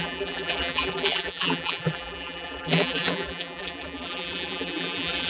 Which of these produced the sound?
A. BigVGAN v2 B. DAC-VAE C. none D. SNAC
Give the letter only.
A